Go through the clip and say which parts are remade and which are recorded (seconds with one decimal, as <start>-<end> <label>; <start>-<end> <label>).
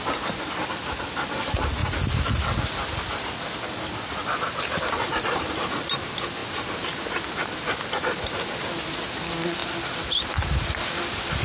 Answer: 0.0-11.4 recorded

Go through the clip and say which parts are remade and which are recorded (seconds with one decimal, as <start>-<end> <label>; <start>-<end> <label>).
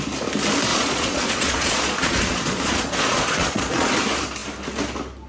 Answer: 0.0-0.7 recorded; 0.7-3.9 remade; 3.9-5.3 recorded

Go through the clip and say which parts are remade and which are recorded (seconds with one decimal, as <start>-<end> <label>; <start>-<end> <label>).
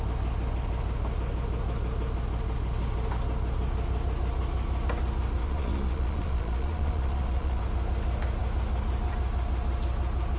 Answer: 0.0-5.4 recorded; 5.4-7.6 remade; 7.6-10.4 recorded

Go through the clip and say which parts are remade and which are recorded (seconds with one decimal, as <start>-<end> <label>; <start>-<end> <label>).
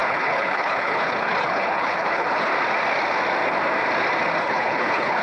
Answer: 0.0-2.5 remade; 2.5-4.4 recorded; 4.4-5.2 remade